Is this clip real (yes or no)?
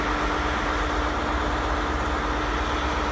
yes